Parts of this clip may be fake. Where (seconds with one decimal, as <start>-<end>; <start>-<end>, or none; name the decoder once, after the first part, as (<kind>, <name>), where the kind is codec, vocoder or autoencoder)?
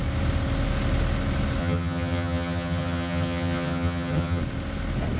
1.6-4.4 (vocoder, HiFi-GAN)